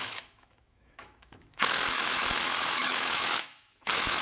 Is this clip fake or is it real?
fake